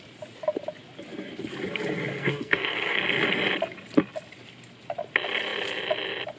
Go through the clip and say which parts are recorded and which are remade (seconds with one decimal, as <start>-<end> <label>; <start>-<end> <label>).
0.0-2.1 recorded; 2.1-3.0 remade; 3.0-6.4 recorded